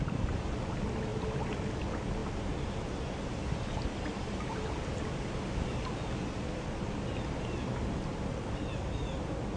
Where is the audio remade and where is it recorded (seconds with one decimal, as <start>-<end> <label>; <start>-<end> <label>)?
0.0-9.6 recorded